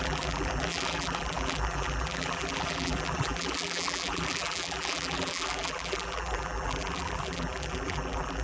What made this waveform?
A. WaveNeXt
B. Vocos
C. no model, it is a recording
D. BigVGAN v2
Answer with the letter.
D